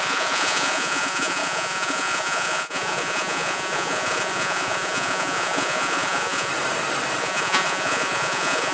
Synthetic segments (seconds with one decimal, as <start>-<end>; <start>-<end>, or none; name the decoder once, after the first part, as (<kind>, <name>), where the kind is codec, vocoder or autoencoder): 0.0-6.5 (vocoder, Vocos); 7.2-8.7